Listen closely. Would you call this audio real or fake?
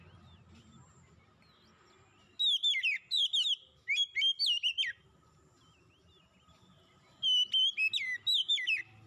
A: real